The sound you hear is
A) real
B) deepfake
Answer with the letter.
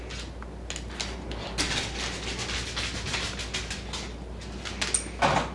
A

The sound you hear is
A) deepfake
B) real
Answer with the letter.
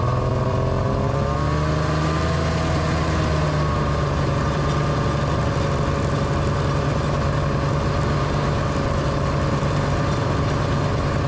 B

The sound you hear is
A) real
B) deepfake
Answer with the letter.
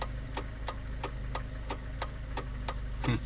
A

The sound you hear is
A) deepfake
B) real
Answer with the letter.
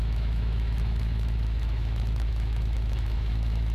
A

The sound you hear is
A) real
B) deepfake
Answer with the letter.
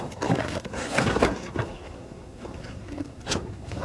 B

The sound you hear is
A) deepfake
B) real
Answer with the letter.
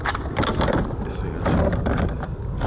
B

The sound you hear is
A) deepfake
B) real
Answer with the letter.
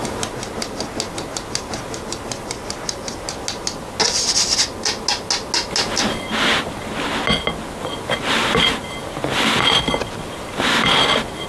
B